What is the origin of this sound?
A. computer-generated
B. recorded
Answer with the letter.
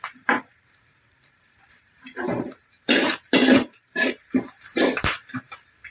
A